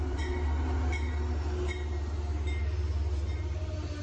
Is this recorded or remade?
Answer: recorded